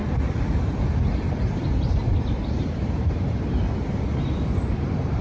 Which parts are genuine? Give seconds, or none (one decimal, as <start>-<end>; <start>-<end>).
0.0-1.7; 3.6-5.2